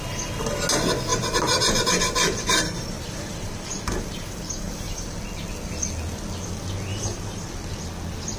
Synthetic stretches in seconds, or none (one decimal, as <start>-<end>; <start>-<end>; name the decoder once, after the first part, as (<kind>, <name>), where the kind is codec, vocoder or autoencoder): 1.1-5.2 (vocoder, BigVGAN v2); 6.9-7.5